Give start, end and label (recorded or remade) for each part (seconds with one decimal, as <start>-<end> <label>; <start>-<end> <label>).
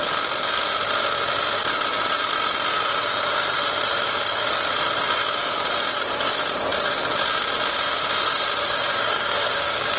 0.0-8.6 recorded; 8.6-10.0 remade